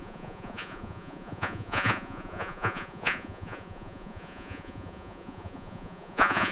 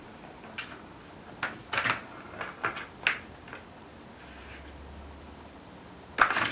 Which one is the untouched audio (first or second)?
second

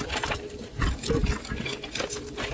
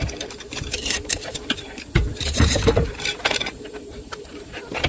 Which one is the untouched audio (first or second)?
first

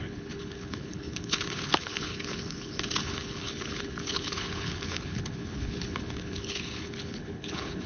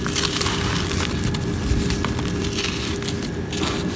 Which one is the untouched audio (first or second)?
second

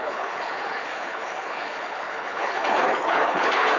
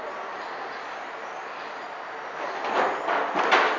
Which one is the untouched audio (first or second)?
second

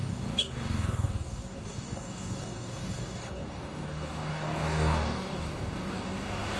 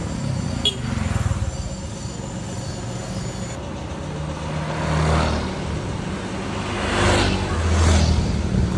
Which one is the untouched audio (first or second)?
second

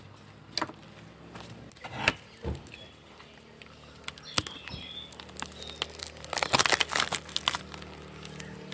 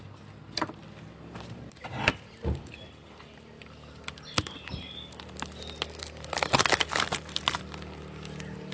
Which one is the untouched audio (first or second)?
first